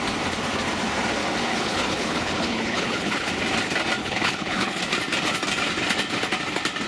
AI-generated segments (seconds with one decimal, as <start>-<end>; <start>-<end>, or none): 1.5-3.3; 4.0-4.8